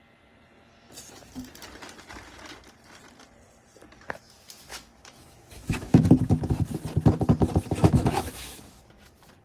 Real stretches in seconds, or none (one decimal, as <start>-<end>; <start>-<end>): 0.0-4.7; 6.1-7.8; 8.8-9.4